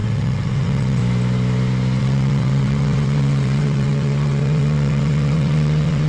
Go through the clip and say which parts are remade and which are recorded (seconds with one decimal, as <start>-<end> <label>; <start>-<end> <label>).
0.0-1.0 remade; 1.0-2.0 recorded; 2.0-6.1 remade